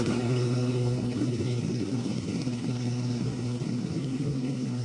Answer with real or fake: fake